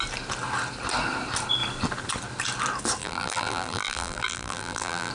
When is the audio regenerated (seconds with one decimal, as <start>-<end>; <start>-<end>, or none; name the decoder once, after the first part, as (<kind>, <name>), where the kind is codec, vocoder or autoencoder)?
3.0-5.1 (vocoder, BigVGAN v2)